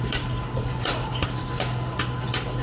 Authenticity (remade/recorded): recorded